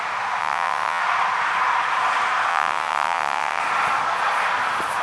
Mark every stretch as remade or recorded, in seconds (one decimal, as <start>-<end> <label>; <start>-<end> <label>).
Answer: 0.0-0.4 recorded; 0.4-1.0 remade; 1.0-2.5 recorded; 2.5-3.6 remade; 3.6-5.0 recorded